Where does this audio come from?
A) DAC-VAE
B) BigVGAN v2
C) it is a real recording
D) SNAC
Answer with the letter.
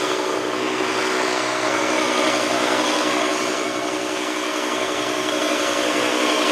D